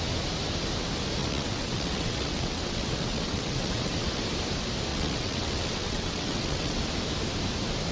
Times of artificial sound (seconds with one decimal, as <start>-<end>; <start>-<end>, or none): 1.2-4.2; 4.9-6.8